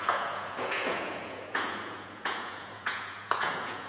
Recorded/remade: remade